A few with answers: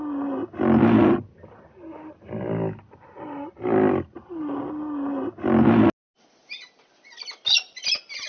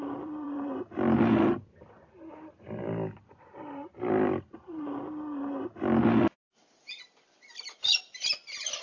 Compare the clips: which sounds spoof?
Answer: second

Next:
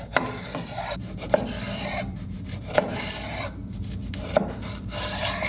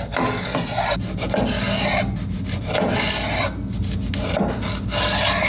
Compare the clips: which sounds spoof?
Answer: first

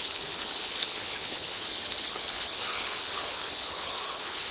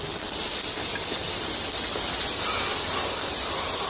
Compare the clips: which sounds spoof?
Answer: first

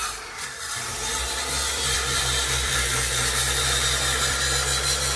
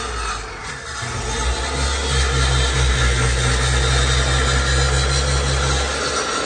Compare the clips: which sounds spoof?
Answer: first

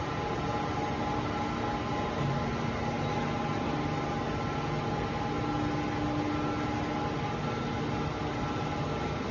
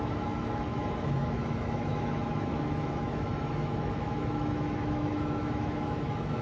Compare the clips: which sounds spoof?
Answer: second